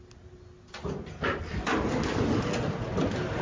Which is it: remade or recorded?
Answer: recorded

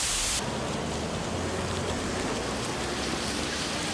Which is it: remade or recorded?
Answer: recorded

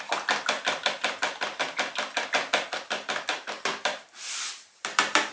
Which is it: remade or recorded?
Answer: recorded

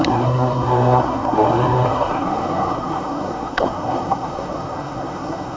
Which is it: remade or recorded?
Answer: remade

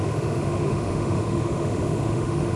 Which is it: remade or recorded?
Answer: remade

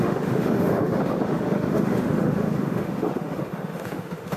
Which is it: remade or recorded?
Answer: remade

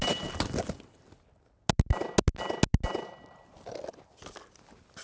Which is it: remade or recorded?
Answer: recorded